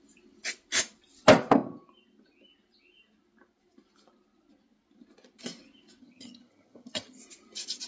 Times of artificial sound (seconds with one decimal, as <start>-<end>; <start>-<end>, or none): 6.0-7.2